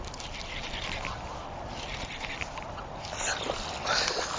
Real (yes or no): yes